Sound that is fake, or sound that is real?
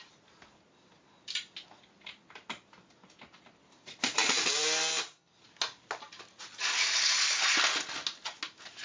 real